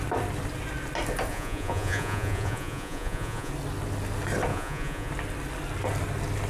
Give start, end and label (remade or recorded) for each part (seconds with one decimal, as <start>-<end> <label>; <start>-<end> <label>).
0.0-1.3 recorded; 1.3-3.5 remade; 3.5-4.5 recorded; 4.5-5.1 remade; 5.1-6.5 recorded